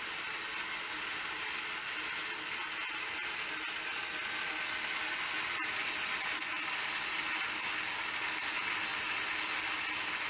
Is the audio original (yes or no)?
yes